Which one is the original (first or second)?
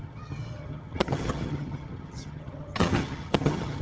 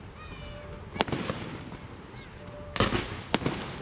second